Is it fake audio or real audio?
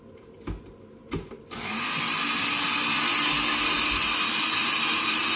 real